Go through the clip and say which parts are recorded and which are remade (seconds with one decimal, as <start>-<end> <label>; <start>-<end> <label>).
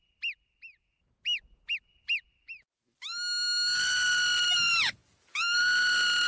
0.0-6.3 recorded